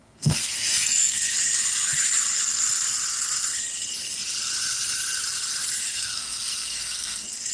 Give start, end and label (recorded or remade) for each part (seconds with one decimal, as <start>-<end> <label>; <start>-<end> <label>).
0.0-1.2 remade; 1.2-5.8 recorded; 5.8-7.5 remade